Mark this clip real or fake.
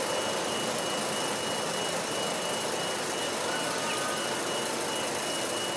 real